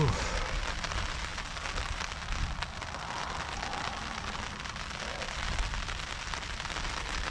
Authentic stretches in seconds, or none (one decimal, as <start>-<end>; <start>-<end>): 0.0-7.3